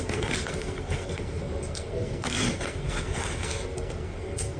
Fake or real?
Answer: fake